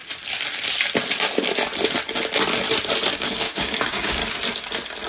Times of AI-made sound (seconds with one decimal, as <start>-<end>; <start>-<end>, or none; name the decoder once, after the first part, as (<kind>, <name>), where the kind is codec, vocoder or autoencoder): 3.1-4.2 (codec, DAC)